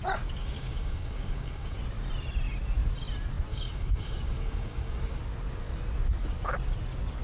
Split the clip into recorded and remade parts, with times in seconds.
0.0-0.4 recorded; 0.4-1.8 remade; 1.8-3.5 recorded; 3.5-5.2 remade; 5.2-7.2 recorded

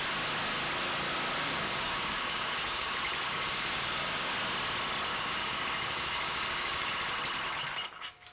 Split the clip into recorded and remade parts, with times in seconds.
0.0-1.4 recorded; 1.4-4.3 remade; 4.3-5.1 recorded; 5.1-6.9 remade; 6.9-8.3 recorded

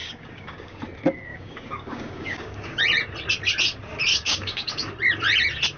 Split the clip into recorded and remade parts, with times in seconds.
0.0-0.8 remade; 0.8-1.3 recorded; 1.3-2.8 remade; 2.8-4.1 recorded; 4.1-4.9 remade; 4.9-5.8 recorded

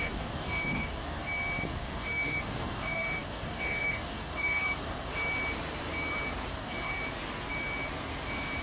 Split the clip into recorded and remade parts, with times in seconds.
0.0-1.2 remade; 1.2-1.7 recorded; 1.7-5.1 remade; 5.1-6.5 recorded; 6.5-6.9 remade; 6.9-8.6 recorded

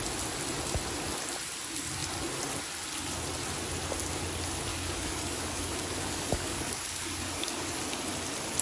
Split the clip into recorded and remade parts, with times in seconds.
0.0-4.7 recorded; 4.7-7.8 remade; 7.8-8.6 recorded

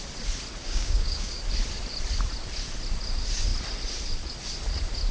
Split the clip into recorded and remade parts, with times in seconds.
0.0-0.6 recorded; 0.6-1.4 remade; 1.4-5.1 recorded

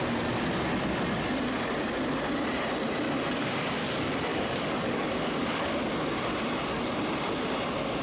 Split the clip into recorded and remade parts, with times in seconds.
0.0-4.3 recorded; 4.3-5.7 remade; 5.7-8.0 recorded